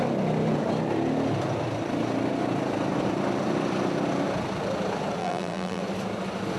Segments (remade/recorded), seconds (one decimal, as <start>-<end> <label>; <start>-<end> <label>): 0.0-5.2 recorded; 5.2-5.8 remade; 5.8-6.6 recorded